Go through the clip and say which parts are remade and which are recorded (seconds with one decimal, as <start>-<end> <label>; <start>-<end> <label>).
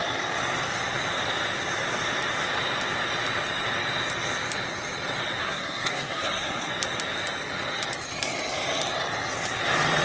0.0-5.4 recorded; 5.4-6.7 remade; 6.7-10.0 recorded